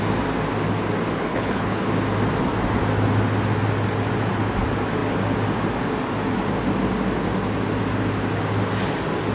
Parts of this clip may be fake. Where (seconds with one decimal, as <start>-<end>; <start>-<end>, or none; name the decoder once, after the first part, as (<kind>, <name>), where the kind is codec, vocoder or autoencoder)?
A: 1.3-1.8 (codec, HILCodec)